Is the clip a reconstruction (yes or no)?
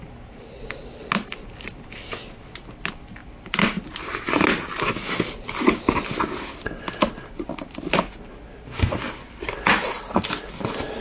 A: no